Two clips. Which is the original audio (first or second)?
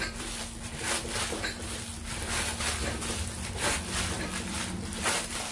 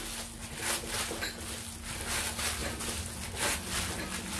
second